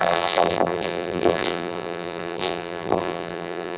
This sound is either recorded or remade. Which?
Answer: remade